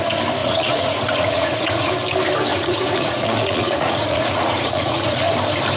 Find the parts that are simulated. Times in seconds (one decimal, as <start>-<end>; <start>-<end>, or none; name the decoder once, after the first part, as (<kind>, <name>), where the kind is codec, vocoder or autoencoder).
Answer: 0.4-1.9 (vocoder, Vocos); 2.5-5.2